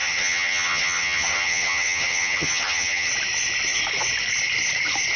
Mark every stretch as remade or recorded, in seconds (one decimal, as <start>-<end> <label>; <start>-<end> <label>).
0.0-3.1 remade; 3.1-5.2 recorded